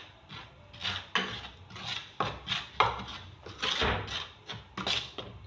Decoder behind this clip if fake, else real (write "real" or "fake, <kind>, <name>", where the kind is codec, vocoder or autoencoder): real